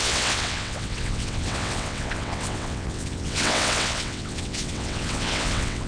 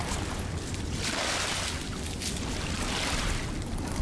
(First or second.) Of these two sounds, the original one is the second